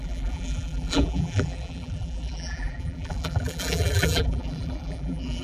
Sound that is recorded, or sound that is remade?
remade